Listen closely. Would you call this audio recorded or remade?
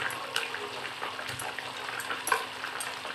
recorded